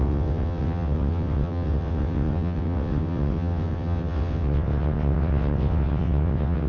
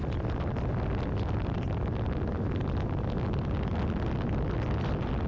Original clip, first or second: second